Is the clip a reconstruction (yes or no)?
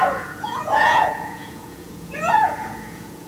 yes